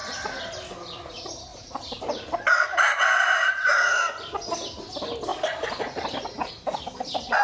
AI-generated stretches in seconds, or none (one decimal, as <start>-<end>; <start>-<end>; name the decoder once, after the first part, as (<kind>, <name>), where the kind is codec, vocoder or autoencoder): 1.5-3.9 (vocoder, BigVGAN v2); 5.3-6.1